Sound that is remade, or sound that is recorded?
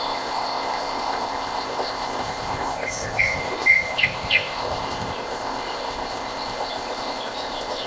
remade